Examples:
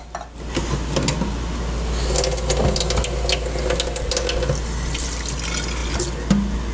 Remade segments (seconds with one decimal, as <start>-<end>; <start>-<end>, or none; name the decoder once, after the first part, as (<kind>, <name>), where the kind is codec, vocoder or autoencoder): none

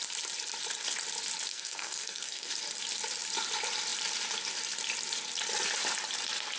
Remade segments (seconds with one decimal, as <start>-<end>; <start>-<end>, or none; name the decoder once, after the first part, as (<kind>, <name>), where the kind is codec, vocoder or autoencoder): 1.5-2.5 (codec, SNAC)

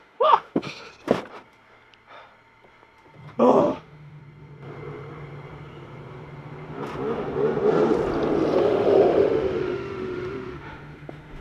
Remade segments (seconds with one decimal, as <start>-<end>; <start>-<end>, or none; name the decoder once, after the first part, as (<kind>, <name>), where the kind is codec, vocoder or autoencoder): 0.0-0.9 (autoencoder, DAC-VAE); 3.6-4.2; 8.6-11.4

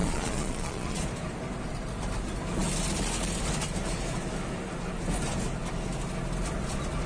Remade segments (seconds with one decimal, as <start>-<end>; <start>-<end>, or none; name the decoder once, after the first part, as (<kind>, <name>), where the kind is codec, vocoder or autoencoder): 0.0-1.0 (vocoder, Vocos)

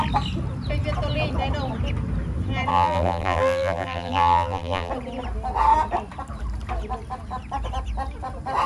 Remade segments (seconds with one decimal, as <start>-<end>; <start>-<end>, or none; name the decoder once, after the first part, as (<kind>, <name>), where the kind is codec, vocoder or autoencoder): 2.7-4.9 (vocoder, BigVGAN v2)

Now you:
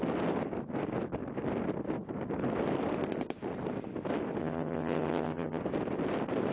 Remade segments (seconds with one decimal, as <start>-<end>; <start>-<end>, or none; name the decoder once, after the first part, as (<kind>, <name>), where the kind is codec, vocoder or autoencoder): 4.4-5.6 (vocoder, HiFi-GAN)